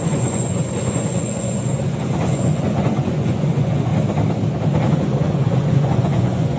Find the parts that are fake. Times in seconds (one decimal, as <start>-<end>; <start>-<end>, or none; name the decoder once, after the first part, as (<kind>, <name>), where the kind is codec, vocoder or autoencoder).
0.0-3.9 (vocoder, Vocos); 4.9-6.6